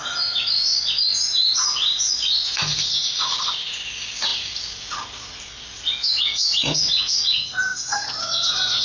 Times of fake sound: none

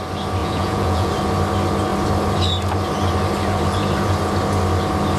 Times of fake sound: 0.4-1.1 (vocoder, Vocos)

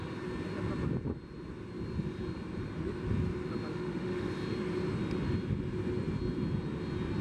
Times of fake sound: 3.7-4.3 (autoencoder, DAC-VAE)

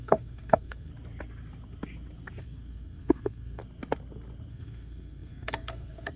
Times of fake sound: 0.0-0.9 (codec, SNAC); 2.4-3.6; 4.5-6.2

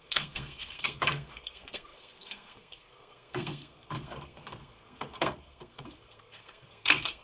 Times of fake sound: 0.0-7.2 (codec, SNAC)

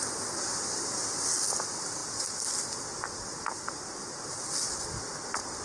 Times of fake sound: none